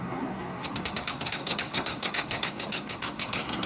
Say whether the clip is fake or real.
fake